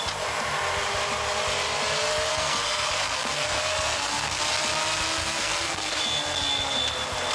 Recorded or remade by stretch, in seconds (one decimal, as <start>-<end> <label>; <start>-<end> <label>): 0.0-2.3 recorded; 2.3-4.4 remade; 4.4-5.2 recorded; 5.2-6.0 remade; 6.0-7.3 recorded